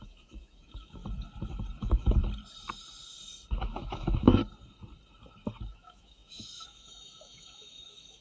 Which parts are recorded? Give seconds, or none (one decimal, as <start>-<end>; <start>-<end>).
1.0-1.8; 2.2-3.6; 4.4-5.7